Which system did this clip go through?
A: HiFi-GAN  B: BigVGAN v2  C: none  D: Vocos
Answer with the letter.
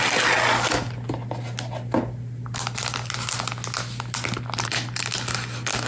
C